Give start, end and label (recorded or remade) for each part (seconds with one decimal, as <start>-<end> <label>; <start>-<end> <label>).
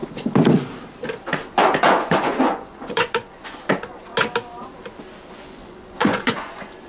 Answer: 0.0-1.3 recorded; 1.3-4.1 remade; 4.1-5.3 recorded; 5.3-6.9 remade